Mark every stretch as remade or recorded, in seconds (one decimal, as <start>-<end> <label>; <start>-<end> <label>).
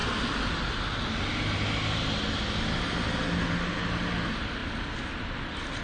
0.0-5.8 recorded